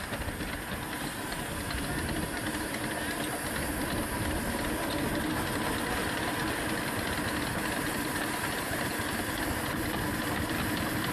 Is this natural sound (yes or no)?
yes